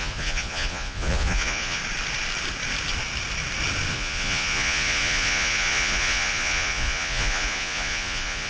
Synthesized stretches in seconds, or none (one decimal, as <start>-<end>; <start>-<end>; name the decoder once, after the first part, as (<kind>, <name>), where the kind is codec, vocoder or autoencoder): 0.0-1.8 (vocoder, Vocos); 3.9-8.5